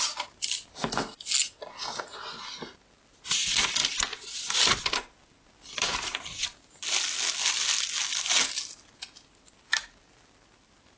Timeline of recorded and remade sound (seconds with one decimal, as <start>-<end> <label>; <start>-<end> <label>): 0.0-11.0 recorded